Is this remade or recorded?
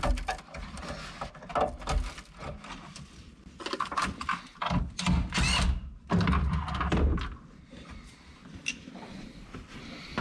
recorded